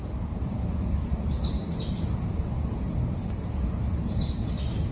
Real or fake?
real